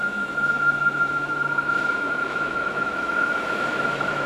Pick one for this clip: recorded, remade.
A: remade